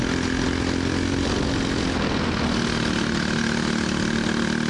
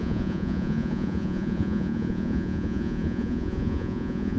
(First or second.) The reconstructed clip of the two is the second